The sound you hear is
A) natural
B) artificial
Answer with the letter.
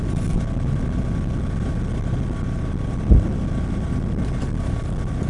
A